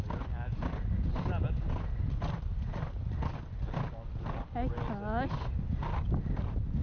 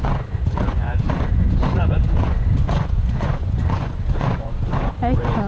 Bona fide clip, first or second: first